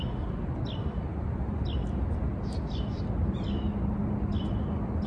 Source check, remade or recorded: recorded